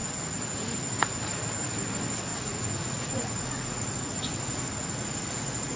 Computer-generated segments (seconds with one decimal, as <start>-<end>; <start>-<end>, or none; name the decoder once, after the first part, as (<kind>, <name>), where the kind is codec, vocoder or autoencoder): 2.3-5.8 (vocoder, Vocos)